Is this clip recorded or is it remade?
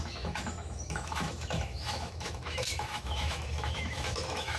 remade